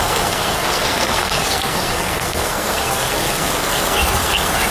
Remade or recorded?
remade